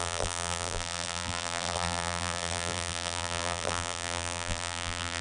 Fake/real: fake